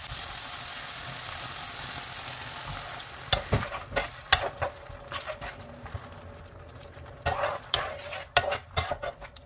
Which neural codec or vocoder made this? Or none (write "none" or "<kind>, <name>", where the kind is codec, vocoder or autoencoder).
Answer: none